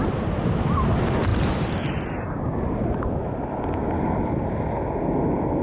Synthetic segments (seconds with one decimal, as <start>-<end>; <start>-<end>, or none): none